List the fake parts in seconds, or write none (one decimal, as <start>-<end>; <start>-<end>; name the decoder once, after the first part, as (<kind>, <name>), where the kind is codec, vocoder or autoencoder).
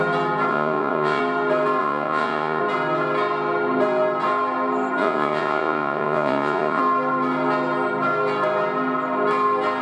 0.5-1.2 (vocoder, Vocos); 1.8-2.6; 5.0-6.8